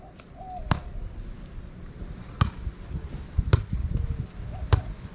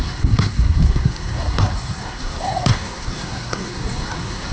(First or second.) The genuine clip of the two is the first